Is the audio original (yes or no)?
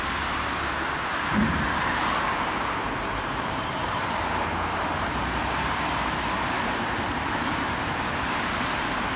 no